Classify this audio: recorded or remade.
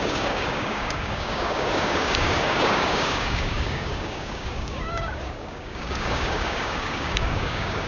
remade